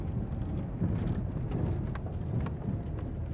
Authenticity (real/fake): real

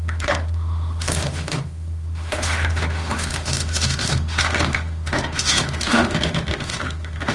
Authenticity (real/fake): fake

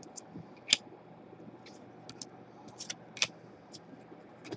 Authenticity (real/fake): real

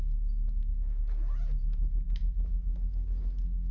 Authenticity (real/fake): real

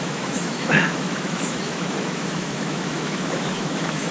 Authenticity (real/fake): fake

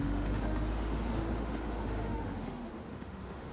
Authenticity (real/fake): fake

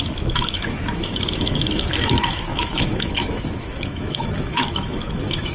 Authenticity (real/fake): fake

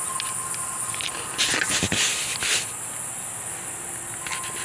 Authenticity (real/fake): real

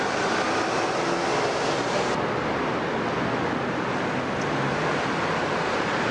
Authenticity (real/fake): real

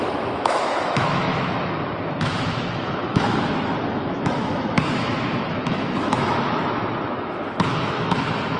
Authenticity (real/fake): fake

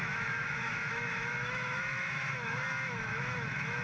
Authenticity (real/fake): fake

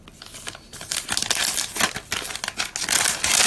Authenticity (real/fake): real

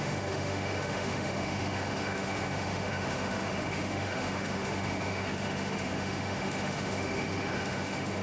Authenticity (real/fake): fake